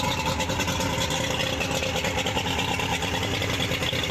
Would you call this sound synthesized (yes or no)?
no